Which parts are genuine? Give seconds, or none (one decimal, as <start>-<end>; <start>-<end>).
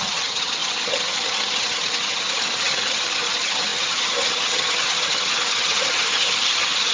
none